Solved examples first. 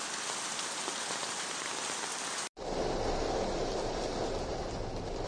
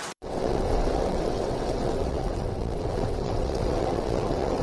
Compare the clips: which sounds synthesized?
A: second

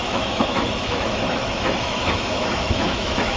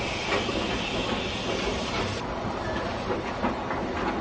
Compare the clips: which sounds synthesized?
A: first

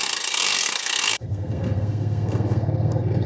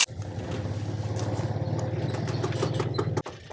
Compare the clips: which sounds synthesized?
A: first